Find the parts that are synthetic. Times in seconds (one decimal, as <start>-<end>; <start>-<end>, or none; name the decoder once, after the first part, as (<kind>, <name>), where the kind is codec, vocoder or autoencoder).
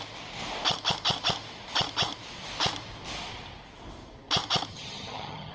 4.7-5.5 (vocoder, HiFi-GAN)